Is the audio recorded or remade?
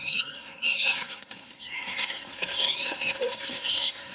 remade